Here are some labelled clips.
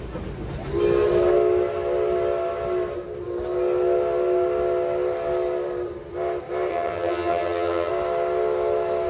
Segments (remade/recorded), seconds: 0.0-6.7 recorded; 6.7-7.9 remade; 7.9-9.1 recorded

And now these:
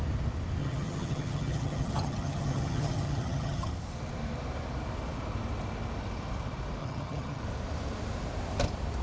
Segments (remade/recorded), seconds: 0.0-0.6 recorded; 0.6-3.7 remade; 3.7-6.8 recorded; 6.8-7.4 remade; 7.4-9.0 recorded

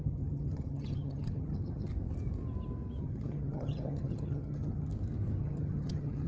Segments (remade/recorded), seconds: 0.0-1.9 remade; 1.9-3.0 recorded; 3.0-4.9 remade; 4.9-5.4 recorded; 5.4-6.3 remade

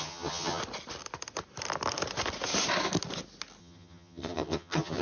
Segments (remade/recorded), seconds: 0.0-0.6 remade; 0.6-3.6 recorded; 3.6-5.0 remade